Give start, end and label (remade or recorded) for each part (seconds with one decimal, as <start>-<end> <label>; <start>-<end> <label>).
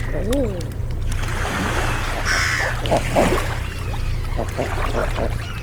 0.0-5.0 recorded; 5.0-5.6 remade